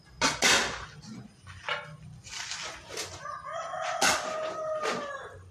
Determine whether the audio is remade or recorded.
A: recorded